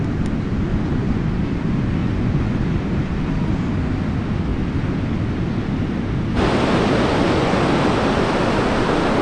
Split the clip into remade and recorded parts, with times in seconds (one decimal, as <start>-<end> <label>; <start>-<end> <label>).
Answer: 0.0-0.7 recorded; 0.7-1.2 remade; 1.2-2.0 recorded; 2.0-2.7 remade; 2.7-7.1 recorded; 7.1-7.6 remade; 7.6-9.2 recorded